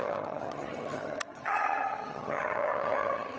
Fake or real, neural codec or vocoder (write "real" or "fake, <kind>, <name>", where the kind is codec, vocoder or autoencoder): fake, vocoder, HiFi-GAN